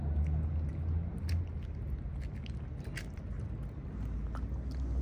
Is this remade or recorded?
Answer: recorded